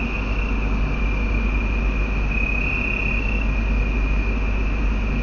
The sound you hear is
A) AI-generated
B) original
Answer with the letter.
B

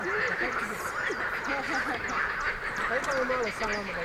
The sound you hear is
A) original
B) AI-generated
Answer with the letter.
A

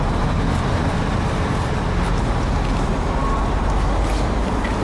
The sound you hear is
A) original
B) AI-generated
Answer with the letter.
A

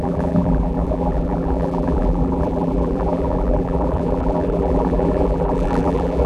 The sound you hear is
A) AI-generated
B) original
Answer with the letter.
A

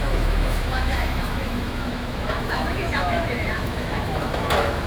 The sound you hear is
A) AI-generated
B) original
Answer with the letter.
A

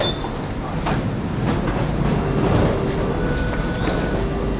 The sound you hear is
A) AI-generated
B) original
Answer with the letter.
B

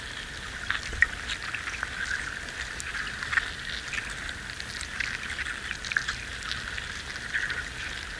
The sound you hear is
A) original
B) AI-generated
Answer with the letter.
A